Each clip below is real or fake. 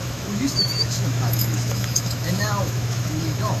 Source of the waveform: fake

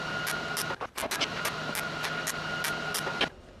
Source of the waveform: real